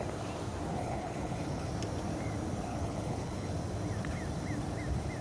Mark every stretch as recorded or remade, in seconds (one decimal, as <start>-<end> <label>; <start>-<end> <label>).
0.0-0.7 recorded; 0.7-1.7 remade; 1.7-2.7 recorded; 2.7-3.5 remade; 3.5-5.2 recorded